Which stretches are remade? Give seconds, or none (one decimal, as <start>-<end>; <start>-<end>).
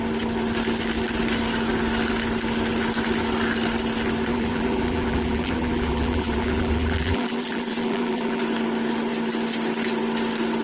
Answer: 4.3-8.4